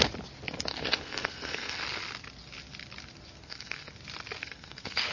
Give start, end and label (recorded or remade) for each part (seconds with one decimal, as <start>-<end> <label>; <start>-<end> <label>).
0.0-0.7 recorded; 0.7-1.8 remade; 1.8-3.4 recorded; 3.4-3.9 remade; 3.9-4.4 recorded; 4.4-5.1 remade